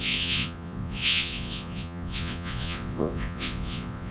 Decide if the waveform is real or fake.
fake